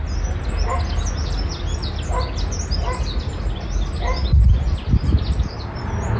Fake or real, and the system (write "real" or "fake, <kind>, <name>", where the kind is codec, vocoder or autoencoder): real